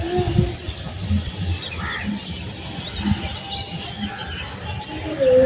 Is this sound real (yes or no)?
yes